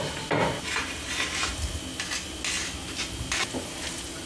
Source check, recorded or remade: recorded